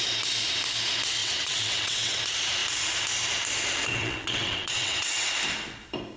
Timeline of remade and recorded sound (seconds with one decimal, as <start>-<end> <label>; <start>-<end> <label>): 0.0-1.2 recorded; 1.2-2.2 remade; 2.2-4.0 recorded; 4.0-5.3 remade; 5.3-6.2 recorded